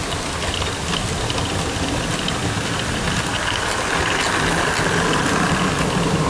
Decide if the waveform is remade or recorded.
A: recorded